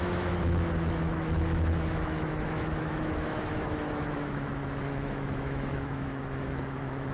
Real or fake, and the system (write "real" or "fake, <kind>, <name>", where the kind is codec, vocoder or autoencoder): fake, autoencoder, DAC-VAE